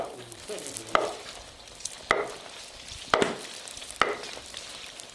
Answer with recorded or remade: remade